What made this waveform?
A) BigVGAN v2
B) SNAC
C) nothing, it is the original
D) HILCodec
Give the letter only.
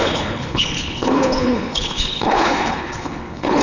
D